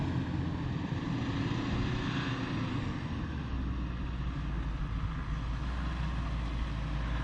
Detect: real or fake real